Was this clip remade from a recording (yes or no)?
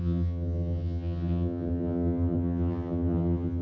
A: yes